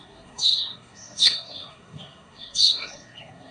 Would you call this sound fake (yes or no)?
yes